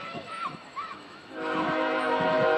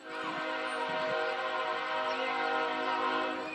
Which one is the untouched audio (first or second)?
second